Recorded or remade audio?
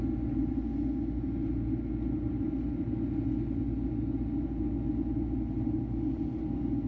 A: recorded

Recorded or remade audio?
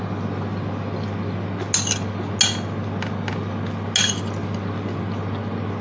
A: recorded